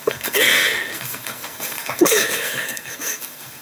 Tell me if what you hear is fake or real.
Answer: fake